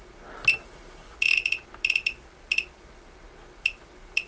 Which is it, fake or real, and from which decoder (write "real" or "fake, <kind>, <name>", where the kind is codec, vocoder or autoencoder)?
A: real